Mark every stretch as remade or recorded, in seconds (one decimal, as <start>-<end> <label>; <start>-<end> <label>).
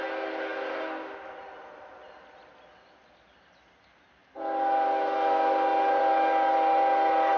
0.0-7.4 recorded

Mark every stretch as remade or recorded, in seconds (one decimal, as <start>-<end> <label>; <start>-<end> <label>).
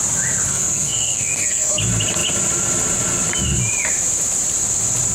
0.0-0.5 recorded; 0.5-1.8 remade; 1.8-5.1 recorded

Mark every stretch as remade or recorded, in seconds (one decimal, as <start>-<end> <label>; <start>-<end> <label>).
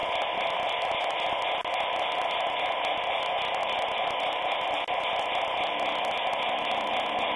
0.0-3.6 recorded; 3.6-4.8 remade; 4.8-7.4 recorded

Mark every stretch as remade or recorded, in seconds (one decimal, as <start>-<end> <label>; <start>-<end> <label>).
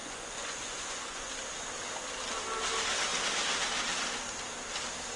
0.0-1.3 remade; 1.3-5.2 recorded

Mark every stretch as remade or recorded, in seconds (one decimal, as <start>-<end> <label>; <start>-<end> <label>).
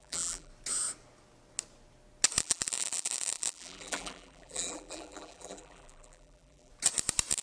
0.0-0.5 remade; 0.5-2.4 recorded; 2.4-6.7 remade; 6.7-7.4 recorded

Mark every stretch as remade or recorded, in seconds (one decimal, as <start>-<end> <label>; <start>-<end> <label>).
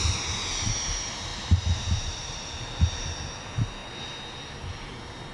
0.0-1.3 recorded; 1.3-2.5 remade; 2.5-5.3 recorded